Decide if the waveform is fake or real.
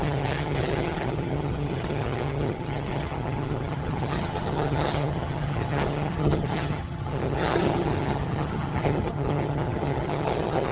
fake